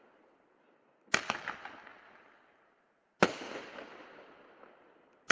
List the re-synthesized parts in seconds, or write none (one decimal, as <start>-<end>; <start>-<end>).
none